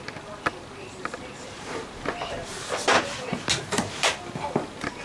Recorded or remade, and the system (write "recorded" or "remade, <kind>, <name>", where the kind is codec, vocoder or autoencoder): recorded